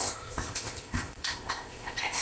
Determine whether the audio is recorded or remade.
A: remade